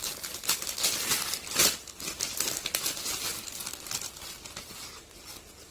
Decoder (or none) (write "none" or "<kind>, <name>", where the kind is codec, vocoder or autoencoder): none